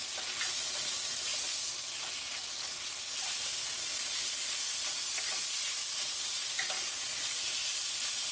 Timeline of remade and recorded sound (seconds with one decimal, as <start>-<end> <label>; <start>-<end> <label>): 0.0-8.3 recorded